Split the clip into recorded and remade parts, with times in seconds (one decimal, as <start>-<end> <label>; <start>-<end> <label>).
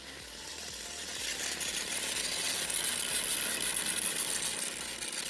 0.0-5.3 recorded